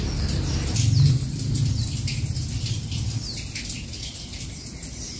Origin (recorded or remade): recorded